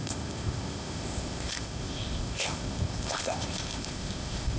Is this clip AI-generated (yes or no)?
yes